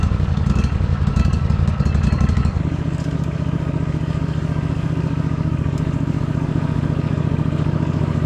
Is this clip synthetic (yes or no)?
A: yes